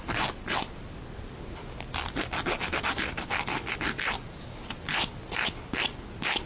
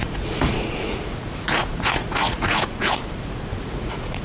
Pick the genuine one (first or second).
first